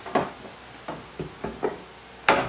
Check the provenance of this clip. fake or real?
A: real